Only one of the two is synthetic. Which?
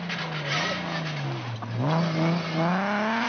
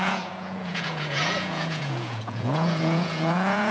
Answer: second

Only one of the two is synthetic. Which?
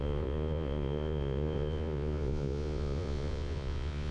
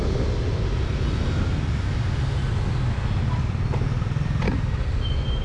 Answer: first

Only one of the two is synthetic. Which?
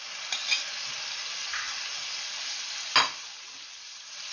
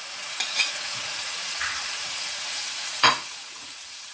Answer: second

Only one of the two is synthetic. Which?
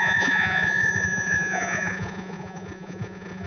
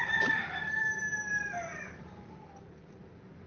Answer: first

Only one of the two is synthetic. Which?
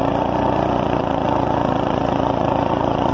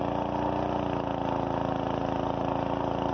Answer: first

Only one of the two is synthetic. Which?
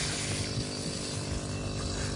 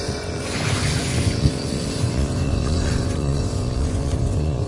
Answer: second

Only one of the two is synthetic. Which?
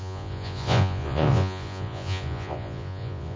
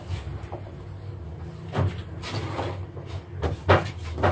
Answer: first